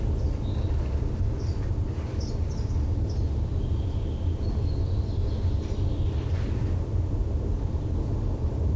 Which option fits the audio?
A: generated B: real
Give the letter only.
B